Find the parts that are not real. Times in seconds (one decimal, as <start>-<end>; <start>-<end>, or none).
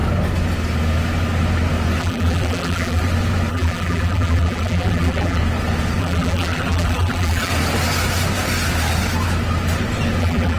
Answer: 2.0-3.0; 3.5-5.4; 6.0-7.5; 10.2-10.6